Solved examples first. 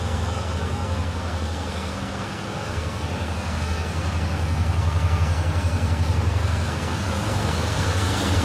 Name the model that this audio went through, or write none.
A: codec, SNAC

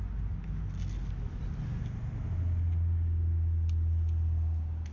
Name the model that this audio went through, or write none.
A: none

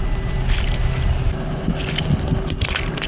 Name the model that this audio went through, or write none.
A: none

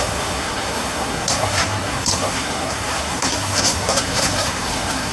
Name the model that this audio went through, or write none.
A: codec, SNAC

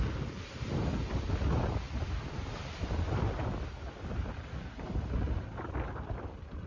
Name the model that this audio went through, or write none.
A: none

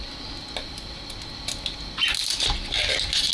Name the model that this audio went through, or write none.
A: none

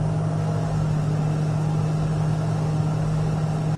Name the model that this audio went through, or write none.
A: none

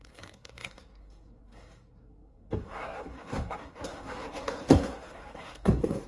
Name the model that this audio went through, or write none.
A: codec, SNAC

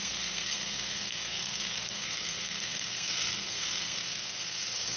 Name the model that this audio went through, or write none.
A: codec, SNAC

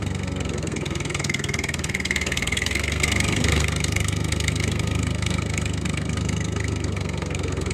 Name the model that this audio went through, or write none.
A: codec, SNAC